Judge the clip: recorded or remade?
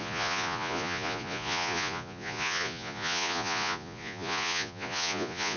remade